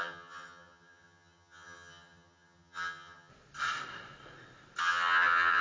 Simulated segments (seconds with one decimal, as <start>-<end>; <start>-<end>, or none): 0.0-3.3; 4.8-5.6